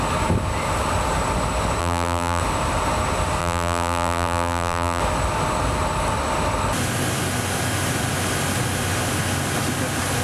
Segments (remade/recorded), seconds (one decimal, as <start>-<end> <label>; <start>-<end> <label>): 0.0-1.8 recorded; 1.8-2.4 remade; 2.4-3.4 recorded; 3.4-5.0 remade; 5.0-10.2 recorded